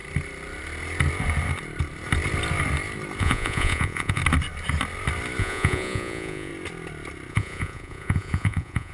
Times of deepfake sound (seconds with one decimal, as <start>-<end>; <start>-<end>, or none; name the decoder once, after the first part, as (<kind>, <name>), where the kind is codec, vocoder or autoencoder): 3.2-4.2 (vocoder, Vocos); 5.4-6.5; 7.3-8.9